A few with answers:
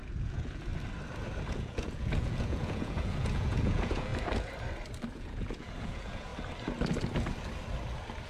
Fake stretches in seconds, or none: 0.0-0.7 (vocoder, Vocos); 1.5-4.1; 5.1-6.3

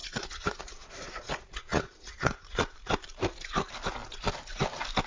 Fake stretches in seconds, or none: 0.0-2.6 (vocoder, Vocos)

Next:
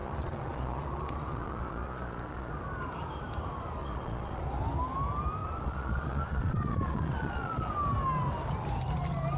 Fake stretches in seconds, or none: 0.0-2.5 (vocoder, Vocos); 3.8-4.4; 5.4-7.7

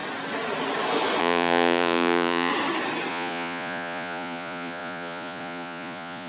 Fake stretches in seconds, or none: 1.2-2.5 (vocoder, Vocos); 3.1-6.3

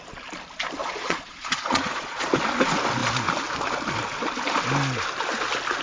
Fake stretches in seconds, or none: 0.8-2.3 (vocoder, Vocos)